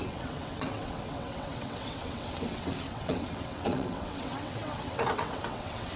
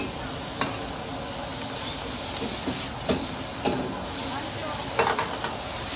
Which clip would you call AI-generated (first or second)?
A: first